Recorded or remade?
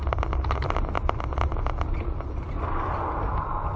recorded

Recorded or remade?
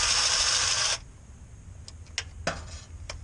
recorded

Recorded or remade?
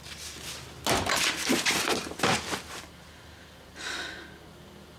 recorded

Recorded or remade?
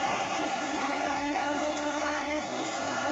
remade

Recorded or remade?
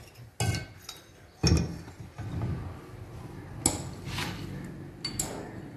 recorded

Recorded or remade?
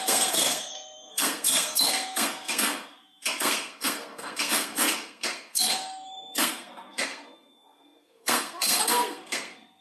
remade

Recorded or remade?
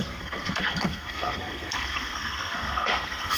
remade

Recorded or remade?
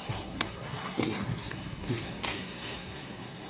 remade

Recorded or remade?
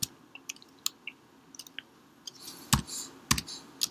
recorded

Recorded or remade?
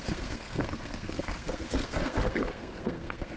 remade